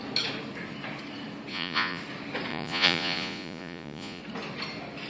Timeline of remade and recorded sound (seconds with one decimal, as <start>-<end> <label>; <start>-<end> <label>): 0.0-1.5 recorded; 1.5-2.0 remade; 2.0-2.5 recorded; 2.5-4.2 remade; 4.2-5.1 recorded